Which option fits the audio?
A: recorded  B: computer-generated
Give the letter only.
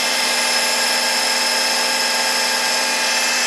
A